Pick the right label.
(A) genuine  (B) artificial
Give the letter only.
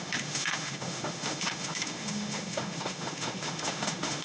B